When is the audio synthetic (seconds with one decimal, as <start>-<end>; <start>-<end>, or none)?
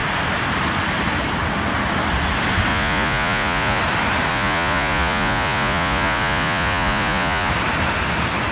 2.7-3.8; 4.3-7.5